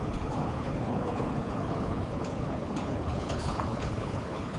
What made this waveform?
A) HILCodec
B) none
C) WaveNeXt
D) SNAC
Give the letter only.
A